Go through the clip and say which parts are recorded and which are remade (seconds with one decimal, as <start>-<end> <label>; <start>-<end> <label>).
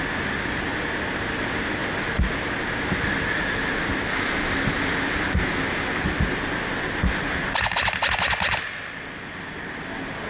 0.0-10.3 recorded